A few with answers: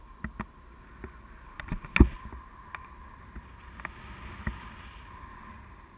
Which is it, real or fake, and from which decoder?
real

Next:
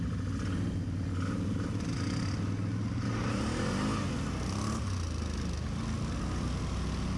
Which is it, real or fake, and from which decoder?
real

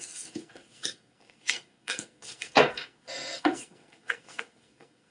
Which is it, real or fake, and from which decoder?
fake, codec, SNAC